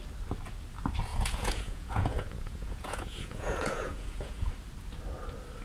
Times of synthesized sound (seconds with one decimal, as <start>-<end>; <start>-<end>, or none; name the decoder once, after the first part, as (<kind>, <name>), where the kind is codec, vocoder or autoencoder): 1.1-4.5 (vocoder, Vocos)

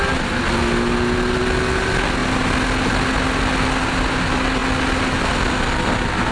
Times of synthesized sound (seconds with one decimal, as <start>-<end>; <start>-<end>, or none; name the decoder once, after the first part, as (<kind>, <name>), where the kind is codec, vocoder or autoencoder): none

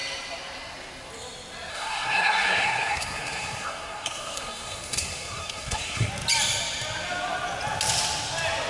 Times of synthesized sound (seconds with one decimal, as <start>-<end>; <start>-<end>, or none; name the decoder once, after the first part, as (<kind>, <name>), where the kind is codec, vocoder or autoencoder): 1.7-6.1 (codec, SNAC)

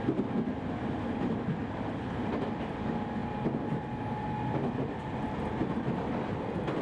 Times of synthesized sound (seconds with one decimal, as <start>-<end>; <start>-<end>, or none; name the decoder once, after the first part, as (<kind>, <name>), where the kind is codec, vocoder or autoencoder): 1.6-2.3 (vocoder, BigVGAN v2)